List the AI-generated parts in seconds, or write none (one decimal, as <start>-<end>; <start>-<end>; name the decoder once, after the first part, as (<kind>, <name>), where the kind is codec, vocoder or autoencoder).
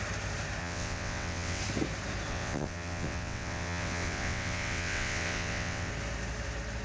0.6-1.6 (vocoder, WaveNeXt); 2.3-5.9